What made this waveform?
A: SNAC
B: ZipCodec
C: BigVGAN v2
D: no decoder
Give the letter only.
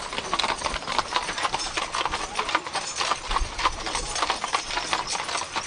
C